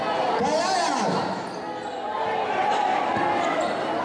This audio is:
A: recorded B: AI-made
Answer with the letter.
A